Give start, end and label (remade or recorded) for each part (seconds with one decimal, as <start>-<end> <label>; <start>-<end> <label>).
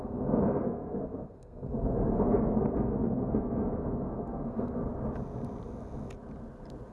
0.0-4.8 remade; 4.8-6.9 recorded